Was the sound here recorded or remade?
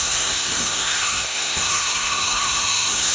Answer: remade